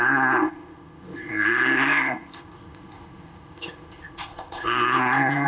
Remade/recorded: remade